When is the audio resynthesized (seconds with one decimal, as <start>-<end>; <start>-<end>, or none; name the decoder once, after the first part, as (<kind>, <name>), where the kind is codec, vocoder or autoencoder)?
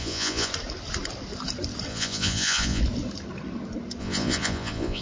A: 0.0-0.5 (vocoder, Vocos); 1.9-2.8; 4.0-5.0